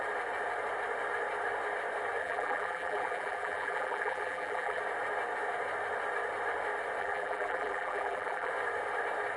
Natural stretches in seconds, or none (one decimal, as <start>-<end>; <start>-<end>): 0.0-2.2; 4.8-7.0; 8.5-9.4